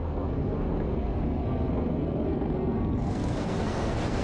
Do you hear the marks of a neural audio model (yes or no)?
yes